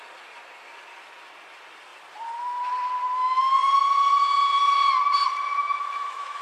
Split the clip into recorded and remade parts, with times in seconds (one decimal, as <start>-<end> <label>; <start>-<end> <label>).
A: 0.0-5.5 recorded; 5.5-6.4 remade